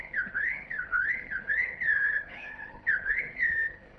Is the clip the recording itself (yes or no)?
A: no